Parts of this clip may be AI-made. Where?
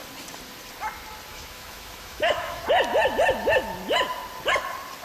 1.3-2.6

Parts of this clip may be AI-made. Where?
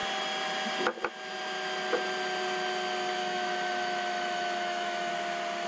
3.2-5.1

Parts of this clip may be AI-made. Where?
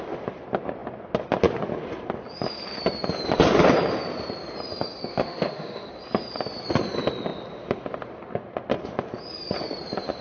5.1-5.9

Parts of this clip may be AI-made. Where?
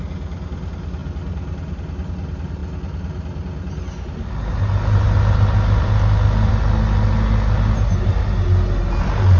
none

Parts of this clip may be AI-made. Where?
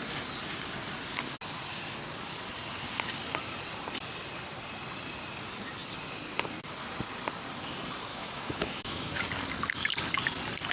8.1-9.1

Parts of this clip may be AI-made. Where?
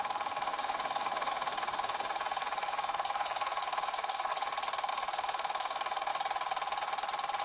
0.0-4.3; 4.9-6.1